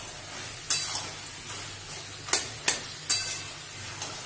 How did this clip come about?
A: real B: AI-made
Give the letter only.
A